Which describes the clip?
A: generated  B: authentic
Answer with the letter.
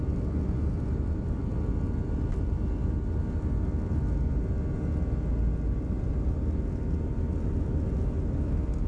B